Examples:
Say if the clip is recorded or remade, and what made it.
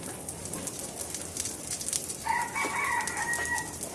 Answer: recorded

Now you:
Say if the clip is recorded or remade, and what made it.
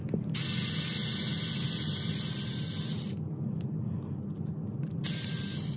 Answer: recorded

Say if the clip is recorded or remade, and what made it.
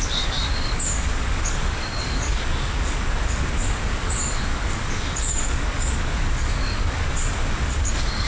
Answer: remade, codec, DAC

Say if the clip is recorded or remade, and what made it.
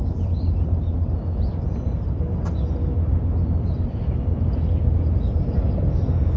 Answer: recorded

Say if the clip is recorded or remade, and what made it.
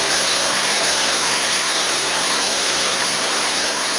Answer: remade, codec, SNAC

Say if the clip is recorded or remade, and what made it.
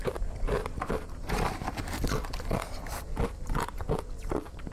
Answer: recorded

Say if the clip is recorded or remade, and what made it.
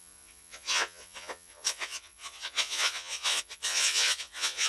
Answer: remade, vocoder, Vocos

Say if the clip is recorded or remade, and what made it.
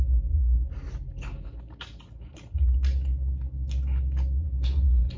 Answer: recorded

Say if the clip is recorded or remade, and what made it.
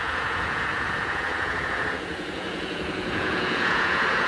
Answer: remade, vocoder, Vocos